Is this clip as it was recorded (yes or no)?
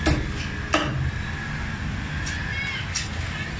yes